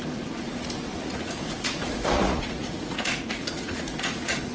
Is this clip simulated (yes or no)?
yes